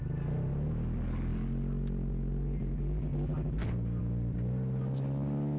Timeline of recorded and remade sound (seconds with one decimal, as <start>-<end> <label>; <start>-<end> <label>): 0.0-5.6 recorded